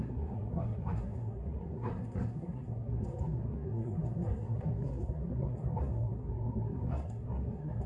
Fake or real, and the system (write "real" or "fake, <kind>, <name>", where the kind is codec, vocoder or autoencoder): fake, codec, SNAC